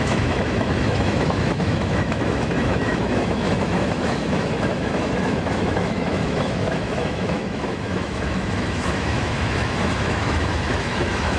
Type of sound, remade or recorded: remade